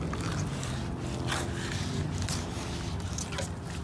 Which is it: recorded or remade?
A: recorded